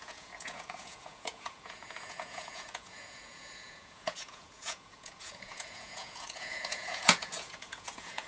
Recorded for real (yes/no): no